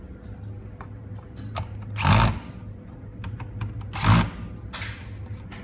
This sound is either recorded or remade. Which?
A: recorded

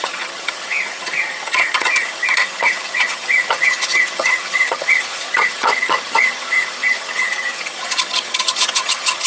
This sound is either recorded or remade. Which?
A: remade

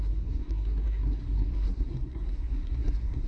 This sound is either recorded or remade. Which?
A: remade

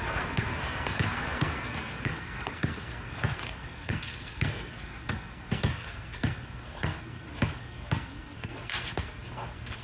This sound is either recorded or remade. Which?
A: remade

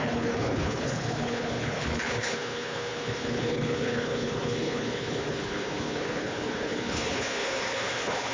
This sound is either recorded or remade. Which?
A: remade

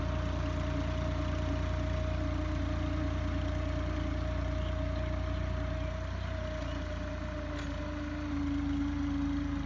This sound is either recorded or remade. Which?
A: recorded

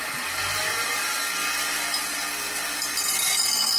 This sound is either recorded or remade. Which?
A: recorded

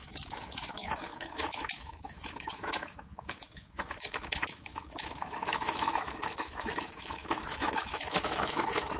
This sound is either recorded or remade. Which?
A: remade